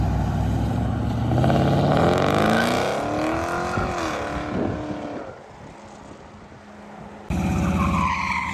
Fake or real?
real